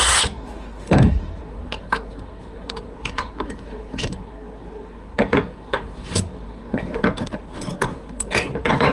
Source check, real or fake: fake